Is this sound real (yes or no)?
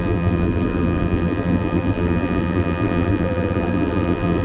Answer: no